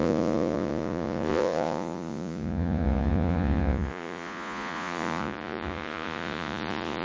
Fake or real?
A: fake